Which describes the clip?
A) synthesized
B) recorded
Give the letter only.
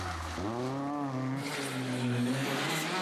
B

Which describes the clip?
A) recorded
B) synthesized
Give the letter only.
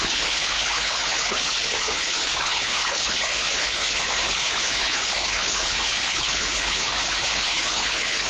B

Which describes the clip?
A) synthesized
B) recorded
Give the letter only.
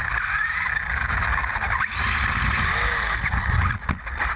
B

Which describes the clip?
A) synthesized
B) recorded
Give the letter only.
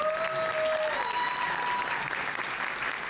B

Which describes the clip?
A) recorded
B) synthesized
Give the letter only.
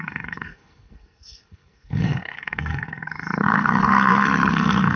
B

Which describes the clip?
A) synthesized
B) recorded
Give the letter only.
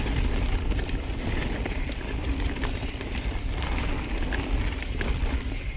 B